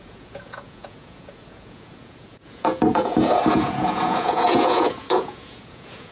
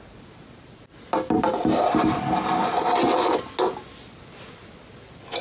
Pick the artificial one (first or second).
first